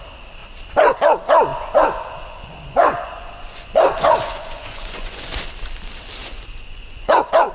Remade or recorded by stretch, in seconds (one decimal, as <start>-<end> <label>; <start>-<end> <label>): 0.0-1.5 recorded; 1.5-5.3 remade; 5.3-6.2 recorded; 6.2-7.5 remade